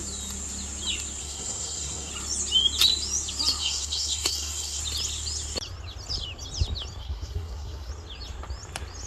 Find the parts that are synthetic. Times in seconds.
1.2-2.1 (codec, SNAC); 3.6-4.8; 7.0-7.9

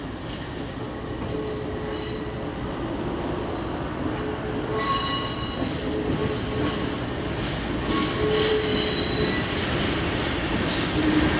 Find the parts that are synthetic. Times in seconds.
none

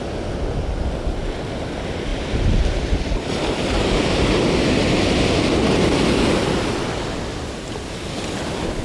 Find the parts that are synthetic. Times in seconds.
2.1-2.9 (vocoder, BigVGAN v2)

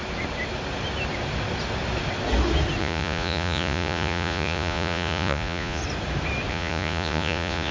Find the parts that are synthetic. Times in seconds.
2.8-5.8 (vocoder, Vocos); 6.5-7.7